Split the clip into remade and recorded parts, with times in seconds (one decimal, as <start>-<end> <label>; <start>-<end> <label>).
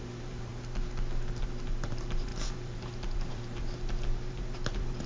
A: 0.0-0.5 remade; 0.5-1.9 recorded; 1.9-5.1 remade